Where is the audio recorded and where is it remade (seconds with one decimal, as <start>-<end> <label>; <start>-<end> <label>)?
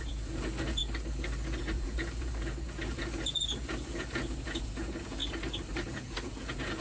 0.0-0.8 remade; 0.8-1.6 recorded; 1.6-5.2 remade; 5.2-5.9 recorded; 5.9-6.8 remade